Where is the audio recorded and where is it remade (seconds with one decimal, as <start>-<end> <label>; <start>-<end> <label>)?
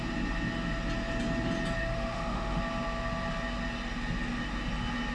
0.0-1.8 recorded; 1.8-2.6 remade; 2.6-5.1 recorded